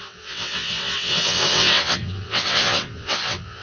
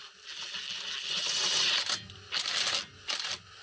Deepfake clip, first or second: first